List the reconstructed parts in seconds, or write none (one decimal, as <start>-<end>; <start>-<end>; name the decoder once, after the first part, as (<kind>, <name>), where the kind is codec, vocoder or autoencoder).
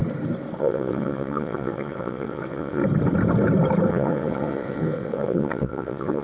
0.6-2.8 (vocoder, WaveNeXt); 3.9-6.2